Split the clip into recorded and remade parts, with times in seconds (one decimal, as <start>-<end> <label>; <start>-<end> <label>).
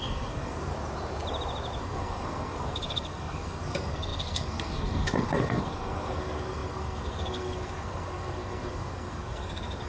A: 0.0-0.7 remade; 0.7-1.8 recorded; 1.8-9.9 remade